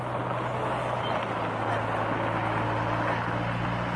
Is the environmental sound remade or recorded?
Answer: recorded